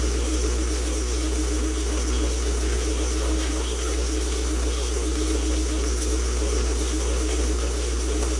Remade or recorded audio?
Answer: remade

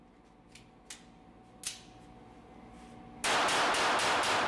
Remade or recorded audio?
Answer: recorded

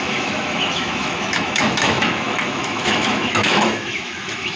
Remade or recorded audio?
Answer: remade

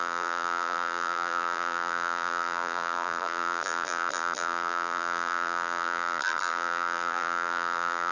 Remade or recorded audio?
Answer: remade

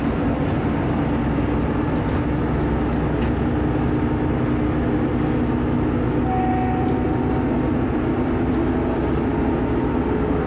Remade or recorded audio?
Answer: recorded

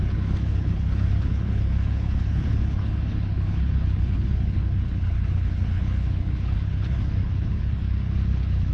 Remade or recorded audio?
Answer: remade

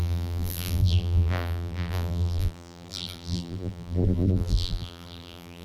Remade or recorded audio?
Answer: remade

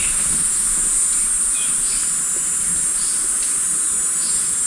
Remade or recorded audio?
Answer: recorded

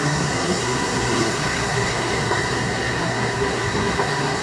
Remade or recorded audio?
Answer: remade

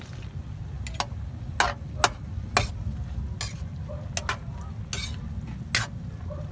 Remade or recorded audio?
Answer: recorded